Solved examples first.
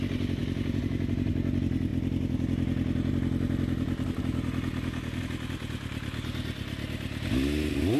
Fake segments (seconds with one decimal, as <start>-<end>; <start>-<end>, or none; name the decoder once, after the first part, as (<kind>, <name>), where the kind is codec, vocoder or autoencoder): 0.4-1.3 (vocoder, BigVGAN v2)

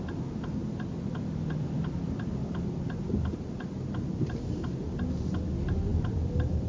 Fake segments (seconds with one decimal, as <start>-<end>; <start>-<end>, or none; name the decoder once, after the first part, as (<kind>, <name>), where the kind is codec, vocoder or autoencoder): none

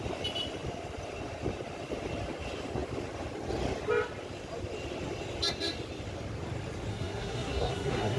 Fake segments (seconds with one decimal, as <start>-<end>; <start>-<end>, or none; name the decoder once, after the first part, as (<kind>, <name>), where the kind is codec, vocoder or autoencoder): 6.9-8.2 (codec, SNAC)